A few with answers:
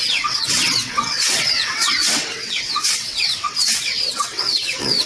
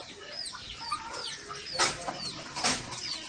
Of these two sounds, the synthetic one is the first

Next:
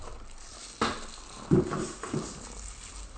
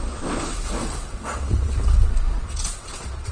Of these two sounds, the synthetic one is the second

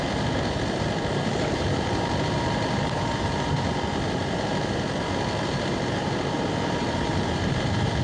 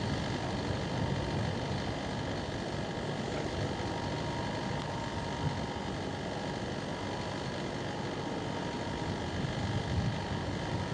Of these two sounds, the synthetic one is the first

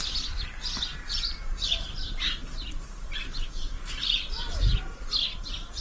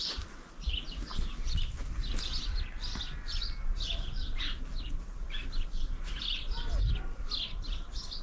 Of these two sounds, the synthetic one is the first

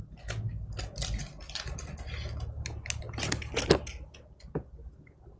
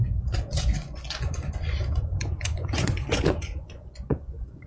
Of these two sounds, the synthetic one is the second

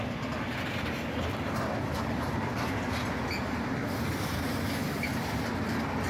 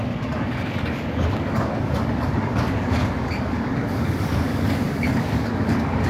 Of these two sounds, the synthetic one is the second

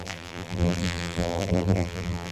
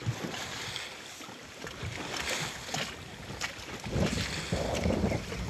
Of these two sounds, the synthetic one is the first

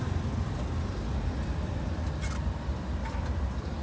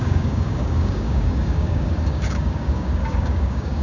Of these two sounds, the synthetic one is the second